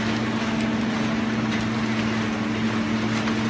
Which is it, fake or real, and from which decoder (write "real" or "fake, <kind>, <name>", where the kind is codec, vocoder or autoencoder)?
real